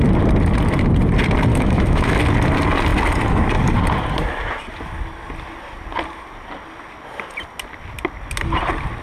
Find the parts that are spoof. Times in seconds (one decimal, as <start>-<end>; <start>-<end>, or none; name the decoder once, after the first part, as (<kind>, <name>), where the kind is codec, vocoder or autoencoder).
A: 1.5-2.2 (autoencoder, DAC-VAE)